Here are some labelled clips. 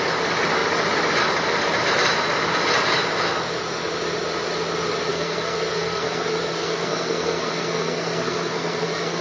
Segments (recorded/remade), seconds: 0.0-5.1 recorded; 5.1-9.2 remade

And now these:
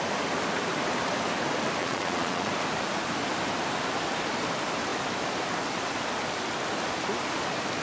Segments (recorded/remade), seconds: 0.0-1.8 recorded; 1.8-2.5 remade; 2.5-7.8 recorded

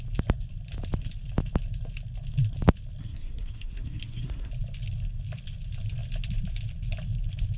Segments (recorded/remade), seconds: 0.0-3.0 recorded; 3.0-4.5 remade; 4.5-7.6 recorded

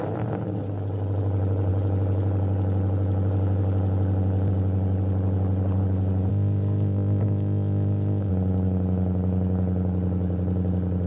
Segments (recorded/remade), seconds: 0.0-6.3 recorded; 6.3-8.3 remade; 8.3-11.1 recorded

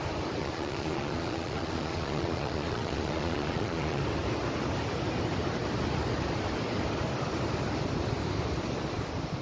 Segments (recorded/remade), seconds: 0.0-0.4 recorded; 0.4-4.0 remade; 4.0-9.4 recorded

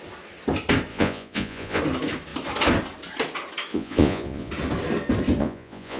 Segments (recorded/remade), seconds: 0.0-0.9 recorded; 0.9-1.8 remade; 1.8-3.7 recorded; 3.7-4.5 remade; 4.5-5.4 recorded; 5.4-6.0 remade